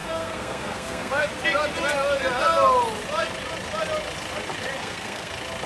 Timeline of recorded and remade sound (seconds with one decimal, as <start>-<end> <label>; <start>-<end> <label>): 0.0-1.3 remade; 1.3-4.8 recorded; 4.8-5.3 remade; 5.3-5.7 recorded